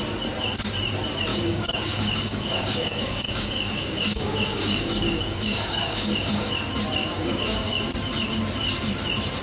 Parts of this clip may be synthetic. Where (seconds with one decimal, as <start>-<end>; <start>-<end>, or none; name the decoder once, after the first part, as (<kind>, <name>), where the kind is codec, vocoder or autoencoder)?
1.3-6.5 (codec, DAC); 7.0-7.8